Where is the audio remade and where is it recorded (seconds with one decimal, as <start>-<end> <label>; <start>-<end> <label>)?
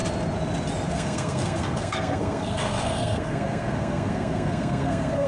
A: 0.0-0.9 recorded; 0.9-5.3 remade